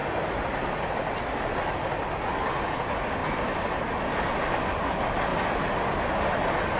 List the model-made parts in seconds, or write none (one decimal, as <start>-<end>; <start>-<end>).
none